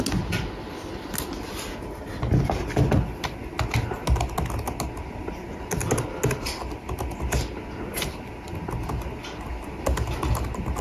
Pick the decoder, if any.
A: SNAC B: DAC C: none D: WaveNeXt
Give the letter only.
C